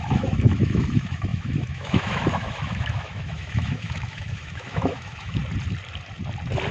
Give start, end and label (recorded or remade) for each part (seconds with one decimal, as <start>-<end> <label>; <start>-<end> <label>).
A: 0.0-5.4 remade; 5.4-6.7 recorded